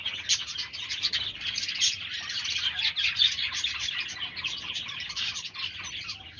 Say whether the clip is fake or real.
real